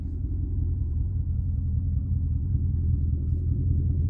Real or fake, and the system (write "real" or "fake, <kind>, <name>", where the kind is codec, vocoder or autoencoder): fake, vocoder, BigVGAN v2